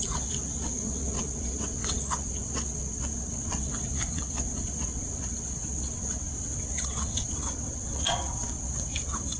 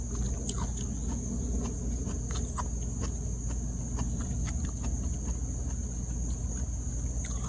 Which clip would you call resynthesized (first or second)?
first